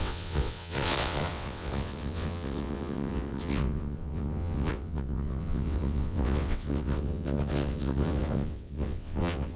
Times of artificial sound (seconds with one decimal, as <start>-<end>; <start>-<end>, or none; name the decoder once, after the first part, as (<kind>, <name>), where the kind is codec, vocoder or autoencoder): 0.0-9.6 (vocoder, WaveNeXt)